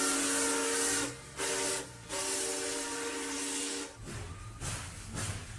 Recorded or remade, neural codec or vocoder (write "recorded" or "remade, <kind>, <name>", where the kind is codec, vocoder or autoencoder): recorded